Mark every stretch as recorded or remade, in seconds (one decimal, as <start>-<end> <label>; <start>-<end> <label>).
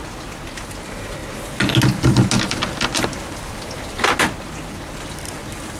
0.0-5.8 recorded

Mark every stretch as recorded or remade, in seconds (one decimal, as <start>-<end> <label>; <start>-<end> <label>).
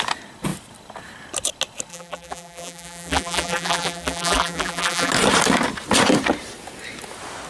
0.0-1.9 recorded; 1.9-5.1 remade; 5.1-7.5 recorded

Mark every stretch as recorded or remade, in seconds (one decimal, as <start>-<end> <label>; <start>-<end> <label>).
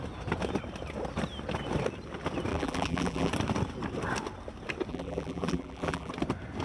0.0-2.5 recorded; 2.5-3.3 remade; 3.3-4.9 recorded; 4.9-6.1 remade; 6.1-6.6 recorded